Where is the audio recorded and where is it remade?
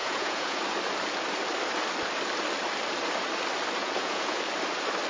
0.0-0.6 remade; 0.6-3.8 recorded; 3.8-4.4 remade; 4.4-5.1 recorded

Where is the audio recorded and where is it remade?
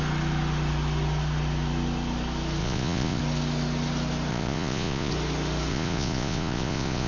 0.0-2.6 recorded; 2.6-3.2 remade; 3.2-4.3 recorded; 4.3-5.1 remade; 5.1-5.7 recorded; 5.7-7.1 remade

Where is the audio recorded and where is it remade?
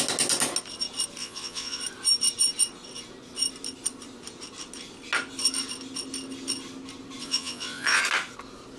0.0-1.2 recorded; 1.2-1.8 remade; 1.8-7.2 recorded; 7.2-8.0 remade; 8.0-8.8 recorded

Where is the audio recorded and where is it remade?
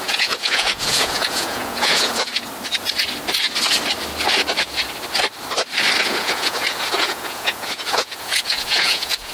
0.0-2.3 remade; 2.3-6.0 recorded; 6.0-9.3 remade